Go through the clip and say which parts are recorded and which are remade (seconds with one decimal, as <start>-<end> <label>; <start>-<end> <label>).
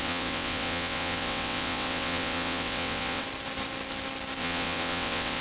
0.0-3.2 remade; 3.2-4.4 recorded; 4.4-5.4 remade